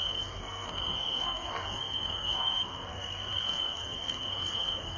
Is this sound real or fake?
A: fake